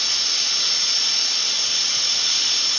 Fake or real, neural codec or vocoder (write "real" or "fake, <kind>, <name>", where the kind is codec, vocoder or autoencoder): real